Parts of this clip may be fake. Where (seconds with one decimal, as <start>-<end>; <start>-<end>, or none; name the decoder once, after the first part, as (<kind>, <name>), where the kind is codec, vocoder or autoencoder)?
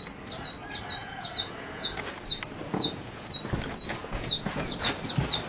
1.0-2.0 (vocoder, Vocos); 2.7-3.3; 3.7-4.9